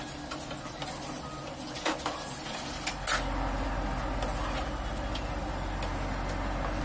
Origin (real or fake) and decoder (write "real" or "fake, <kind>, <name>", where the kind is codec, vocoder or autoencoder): real